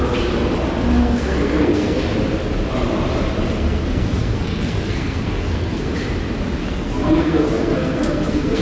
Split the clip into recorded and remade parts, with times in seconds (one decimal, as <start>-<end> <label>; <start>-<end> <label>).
0.0-1.0 recorded; 1.0-2.0 remade; 2.0-3.4 recorded; 3.4-5.9 remade; 5.9-6.6 recorded; 6.6-8.6 remade